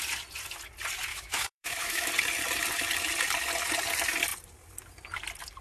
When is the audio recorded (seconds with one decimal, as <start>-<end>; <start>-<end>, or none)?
0.0-1.1; 2.1-5.6